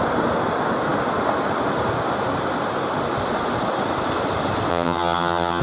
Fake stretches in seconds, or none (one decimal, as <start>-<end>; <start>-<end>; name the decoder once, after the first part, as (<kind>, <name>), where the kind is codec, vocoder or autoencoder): 4.7-5.6 (vocoder, HiFi-GAN)